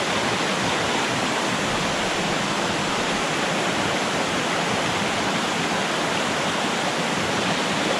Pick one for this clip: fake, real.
real